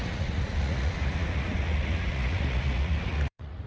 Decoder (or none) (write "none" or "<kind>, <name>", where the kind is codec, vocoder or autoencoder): vocoder, Vocos